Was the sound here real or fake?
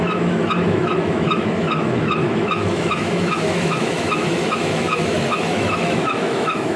fake